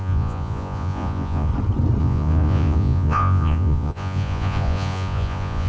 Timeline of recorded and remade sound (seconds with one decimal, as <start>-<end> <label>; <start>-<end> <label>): 0.0-1.5 remade; 1.5-2.0 recorded; 2.0-5.7 remade